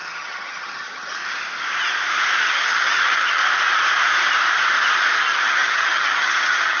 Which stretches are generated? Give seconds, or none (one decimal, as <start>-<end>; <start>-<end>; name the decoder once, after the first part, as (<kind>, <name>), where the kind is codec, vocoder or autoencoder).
0.0-1.2 (vocoder, HiFi-GAN); 2.4-3.4; 5.2-6.8